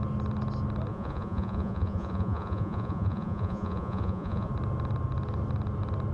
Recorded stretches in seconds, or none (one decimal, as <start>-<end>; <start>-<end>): 0.0-0.9; 4.5-6.1